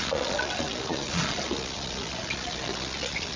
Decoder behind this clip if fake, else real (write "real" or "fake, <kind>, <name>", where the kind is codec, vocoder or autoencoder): fake, vocoder, Vocos